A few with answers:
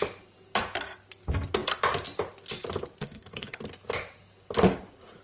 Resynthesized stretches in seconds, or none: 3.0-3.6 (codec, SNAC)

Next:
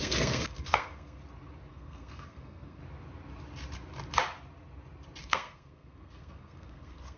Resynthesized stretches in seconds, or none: 0.0-1.2 (codec, SNAC); 1.7-2.8; 5.2-7.2

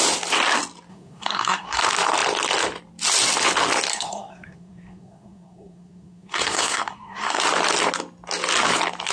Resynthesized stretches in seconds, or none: 0.9-1.8 (codec, SNAC); 3.9-7.4

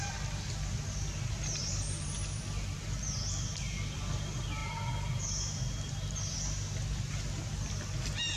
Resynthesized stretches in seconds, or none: none

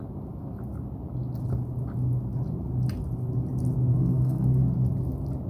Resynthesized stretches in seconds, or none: 3.9-4.6 (codec, SNAC)

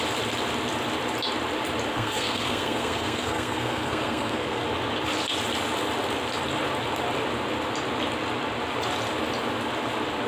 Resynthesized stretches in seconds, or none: 1.9-4.6 (codec, SNAC)

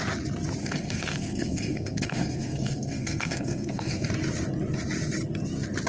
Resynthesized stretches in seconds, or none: 0.6-4.1 (codec, SNAC)

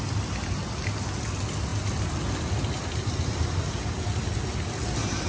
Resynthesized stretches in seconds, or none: none